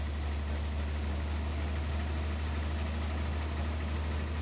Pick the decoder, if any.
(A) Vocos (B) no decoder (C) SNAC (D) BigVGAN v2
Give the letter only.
B